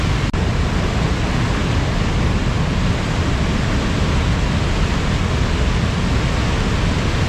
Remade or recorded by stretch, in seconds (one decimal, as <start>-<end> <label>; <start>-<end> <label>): 0.0-7.3 recorded